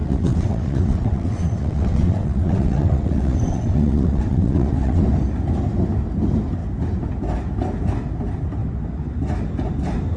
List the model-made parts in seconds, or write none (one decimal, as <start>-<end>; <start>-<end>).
0.0-5.0